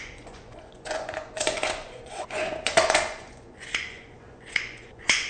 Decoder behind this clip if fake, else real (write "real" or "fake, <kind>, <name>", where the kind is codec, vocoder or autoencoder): fake, vocoder, Vocos